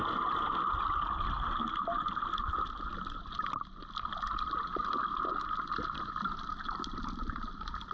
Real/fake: real